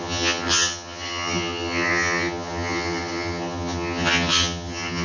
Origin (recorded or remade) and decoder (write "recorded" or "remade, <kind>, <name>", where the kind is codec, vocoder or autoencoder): remade, vocoder, HiFi-GAN